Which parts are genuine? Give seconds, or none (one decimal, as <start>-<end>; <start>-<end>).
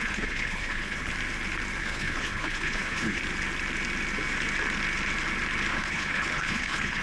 1.1-1.8; 3.2-5.7